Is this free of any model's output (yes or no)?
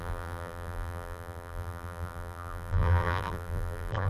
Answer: no